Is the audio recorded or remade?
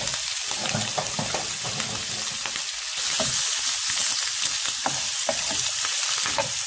recorded